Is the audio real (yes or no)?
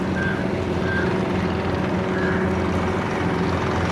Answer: yes